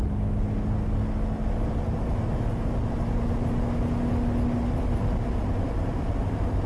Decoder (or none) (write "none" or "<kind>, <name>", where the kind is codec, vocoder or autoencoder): none